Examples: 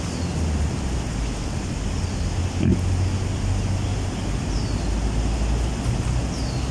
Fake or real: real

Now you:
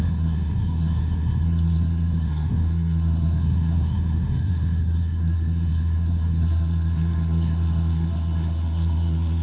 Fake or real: fake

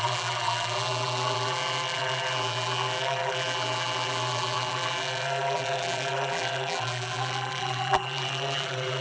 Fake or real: fake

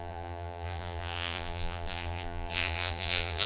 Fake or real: fake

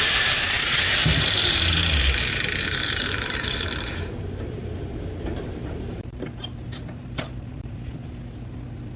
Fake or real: fake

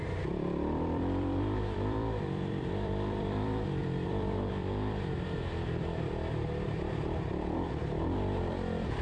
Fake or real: fake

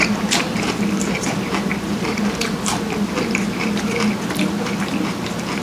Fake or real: fake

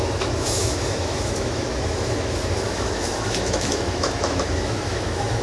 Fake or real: fake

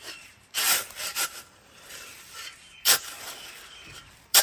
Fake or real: fake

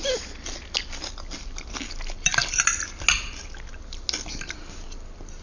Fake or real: real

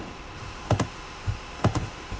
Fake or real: fake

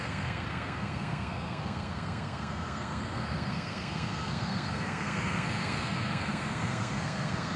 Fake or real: fake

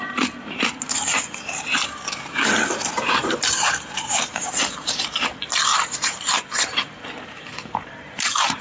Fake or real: fake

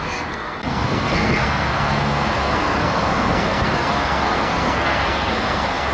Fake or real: fake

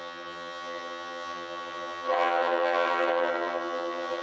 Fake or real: fake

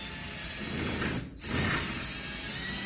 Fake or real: real